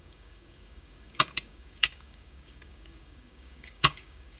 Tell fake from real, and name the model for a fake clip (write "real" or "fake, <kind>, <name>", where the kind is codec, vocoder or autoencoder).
fake, codec, DAC